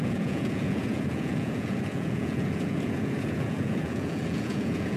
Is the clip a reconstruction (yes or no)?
yes